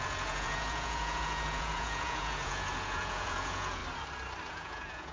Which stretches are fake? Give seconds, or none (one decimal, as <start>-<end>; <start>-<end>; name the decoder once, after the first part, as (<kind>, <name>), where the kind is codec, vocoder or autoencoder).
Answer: 0.0-3.8 (vocoder, Vocos); 4.5-5.1